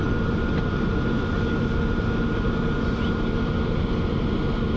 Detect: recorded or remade recorded